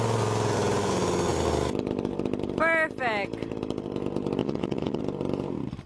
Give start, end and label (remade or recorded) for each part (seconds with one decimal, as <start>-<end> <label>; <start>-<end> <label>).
0.0-4.4 recorded; 4.4-5.0 remade; 5.0-5.9 recorded